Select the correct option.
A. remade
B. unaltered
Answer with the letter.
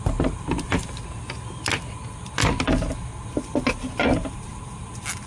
B